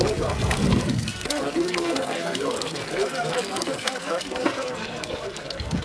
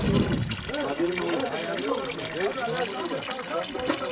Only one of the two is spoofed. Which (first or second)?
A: first